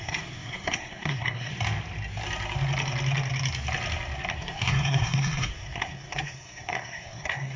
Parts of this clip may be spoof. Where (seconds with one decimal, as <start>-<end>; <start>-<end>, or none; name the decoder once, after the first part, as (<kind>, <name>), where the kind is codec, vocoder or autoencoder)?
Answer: 0.0-1.5 (codec, SNAC); 4.3-7.6